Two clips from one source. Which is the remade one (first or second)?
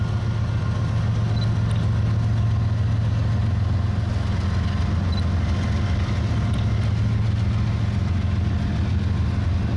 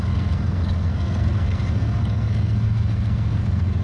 second